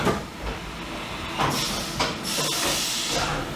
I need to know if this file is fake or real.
real